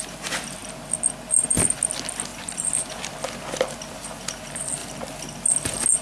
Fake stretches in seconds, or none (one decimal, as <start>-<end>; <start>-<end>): 2.3-3.0